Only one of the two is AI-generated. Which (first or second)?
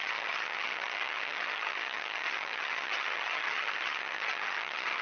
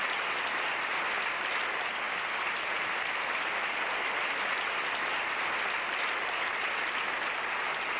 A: first